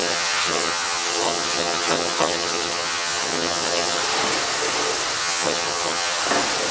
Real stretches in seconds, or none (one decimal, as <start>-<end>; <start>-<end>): 4.0-5.2; 6.2-6.7